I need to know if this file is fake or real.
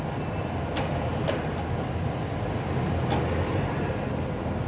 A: real